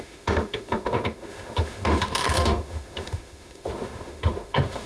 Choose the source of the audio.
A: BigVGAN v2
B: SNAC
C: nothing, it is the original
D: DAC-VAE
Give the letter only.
D